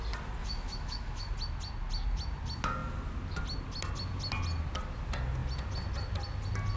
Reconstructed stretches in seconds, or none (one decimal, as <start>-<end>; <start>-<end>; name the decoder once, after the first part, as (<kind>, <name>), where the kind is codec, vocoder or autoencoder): 0.4-1.3 (autoencoder, DAC-VAE)